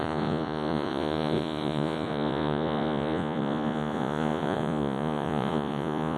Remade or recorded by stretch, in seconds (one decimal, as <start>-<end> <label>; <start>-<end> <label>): 0.0-6.2 remade

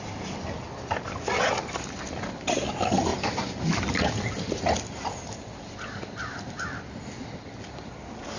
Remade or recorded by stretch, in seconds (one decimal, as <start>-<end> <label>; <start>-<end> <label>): 0.0-8.4 recorded

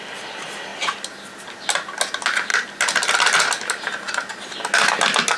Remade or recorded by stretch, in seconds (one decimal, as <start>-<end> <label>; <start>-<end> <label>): 0.0-5.4 recorded

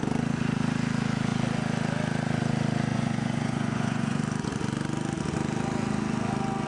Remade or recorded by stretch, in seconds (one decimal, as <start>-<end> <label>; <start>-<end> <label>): 0.0-2.9 recorded; 2.9-4.2 remade; 4.2-6.7 recorded

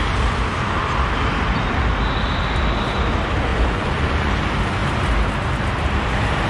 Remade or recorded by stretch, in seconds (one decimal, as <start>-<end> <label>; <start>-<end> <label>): 0.0-3.5 recorded; 3.5-4.3 remade; 4.3-6.5 recorded